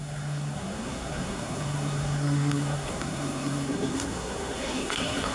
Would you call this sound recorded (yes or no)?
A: no